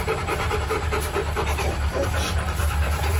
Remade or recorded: remade